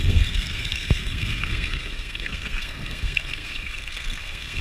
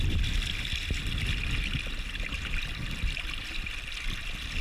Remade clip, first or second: first